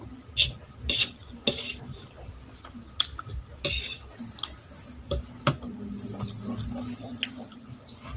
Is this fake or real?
real